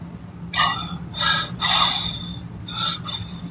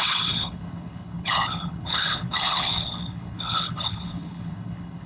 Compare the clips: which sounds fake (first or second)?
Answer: second